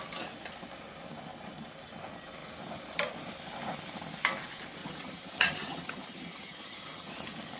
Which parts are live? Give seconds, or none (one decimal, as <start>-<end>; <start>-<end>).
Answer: 0.0-4.8; 7.1-7.6